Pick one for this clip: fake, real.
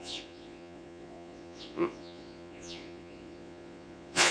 fake